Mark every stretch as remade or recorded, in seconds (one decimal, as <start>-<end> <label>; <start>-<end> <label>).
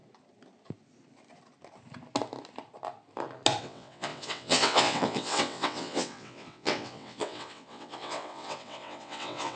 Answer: 0.0-3.6 recorded; 3.6-9.6 remade